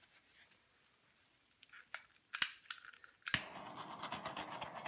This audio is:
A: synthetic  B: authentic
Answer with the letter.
B